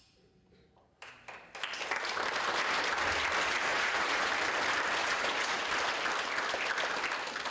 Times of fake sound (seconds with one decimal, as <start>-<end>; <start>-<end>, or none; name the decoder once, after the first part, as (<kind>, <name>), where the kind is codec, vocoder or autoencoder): 3.7-4.3 (vocoder, Vocos); 5.0-5.7